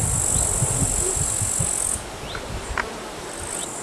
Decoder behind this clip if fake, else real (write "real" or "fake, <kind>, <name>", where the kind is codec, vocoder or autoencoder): real